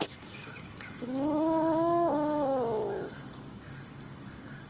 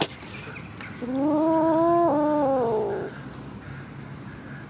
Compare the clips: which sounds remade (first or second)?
first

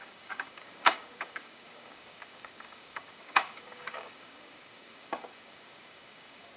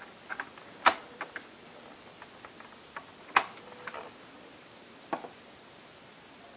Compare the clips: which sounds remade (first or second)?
first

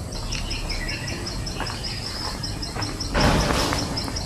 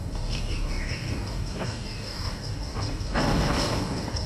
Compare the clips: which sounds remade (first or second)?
second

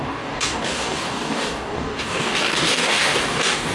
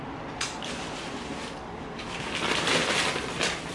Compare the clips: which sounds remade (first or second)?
first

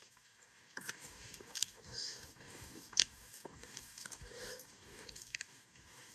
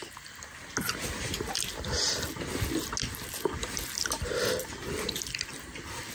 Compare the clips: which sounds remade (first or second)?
first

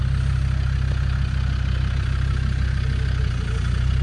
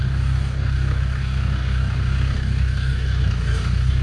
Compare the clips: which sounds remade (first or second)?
second